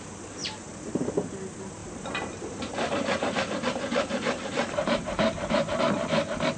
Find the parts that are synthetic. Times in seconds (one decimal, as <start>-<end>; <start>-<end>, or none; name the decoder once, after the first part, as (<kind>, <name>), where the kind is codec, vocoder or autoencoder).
0.4-1.1 (vocoder, BigVGAN v2); 1.8-5.8